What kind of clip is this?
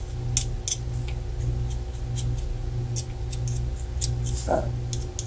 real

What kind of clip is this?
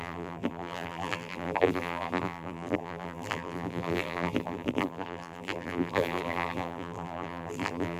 fake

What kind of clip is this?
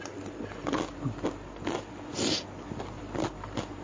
real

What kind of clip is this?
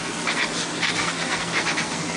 fake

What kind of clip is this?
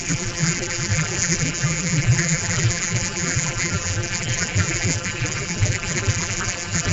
fake